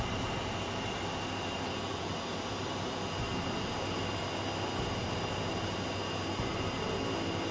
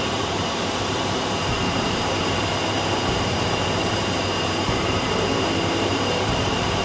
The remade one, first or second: second